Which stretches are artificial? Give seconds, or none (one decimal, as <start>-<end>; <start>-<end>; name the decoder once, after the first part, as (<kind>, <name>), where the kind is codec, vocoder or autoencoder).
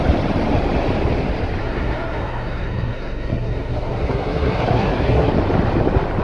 1.6-5.3 (codec, SNAC)